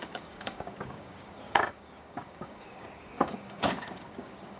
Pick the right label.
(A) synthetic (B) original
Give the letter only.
A